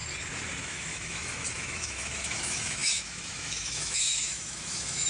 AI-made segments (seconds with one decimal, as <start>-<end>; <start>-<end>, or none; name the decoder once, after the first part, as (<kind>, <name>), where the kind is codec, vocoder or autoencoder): 0.6-5.1 (autoencoder, DAC-VAE)